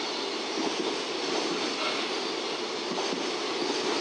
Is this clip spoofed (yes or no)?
no